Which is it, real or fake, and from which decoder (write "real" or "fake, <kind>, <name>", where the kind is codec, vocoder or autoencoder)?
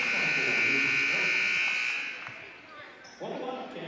real